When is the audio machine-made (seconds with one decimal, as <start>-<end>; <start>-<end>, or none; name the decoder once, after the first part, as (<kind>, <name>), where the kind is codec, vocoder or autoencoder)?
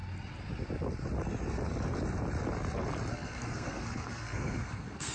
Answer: 3.1-5.1 (codec, SNAC)